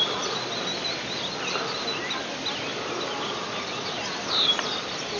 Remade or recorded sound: recorded